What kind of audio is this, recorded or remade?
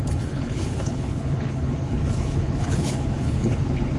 remade